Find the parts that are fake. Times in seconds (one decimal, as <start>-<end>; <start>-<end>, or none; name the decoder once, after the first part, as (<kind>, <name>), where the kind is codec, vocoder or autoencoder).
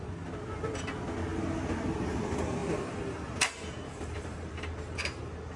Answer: 2.6-4.7 (vocoder, BigVGAN v2)